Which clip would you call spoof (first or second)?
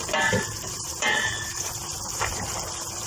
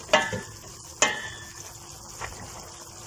first